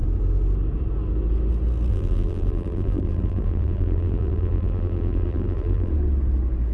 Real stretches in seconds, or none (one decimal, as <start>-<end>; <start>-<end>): 0.0-1.9; 5.9-6.7